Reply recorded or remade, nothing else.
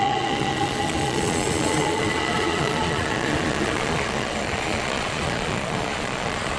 remade